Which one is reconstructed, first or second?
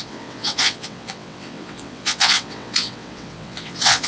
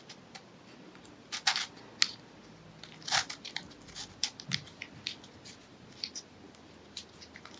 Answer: first